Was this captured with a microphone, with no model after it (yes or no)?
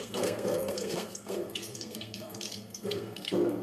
no